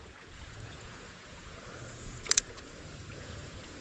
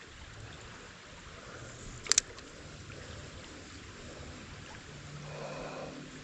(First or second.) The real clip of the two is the second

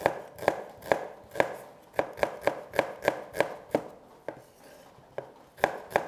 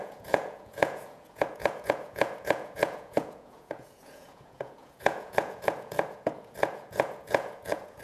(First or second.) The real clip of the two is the first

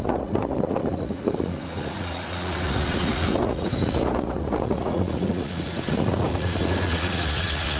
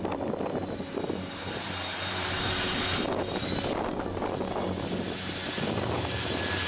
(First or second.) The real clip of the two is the second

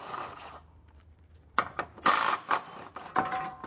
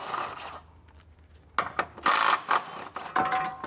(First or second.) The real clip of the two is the second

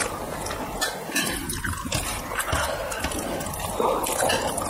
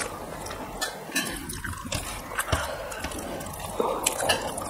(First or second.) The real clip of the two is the second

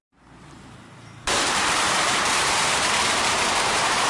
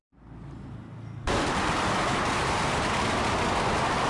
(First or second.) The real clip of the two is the second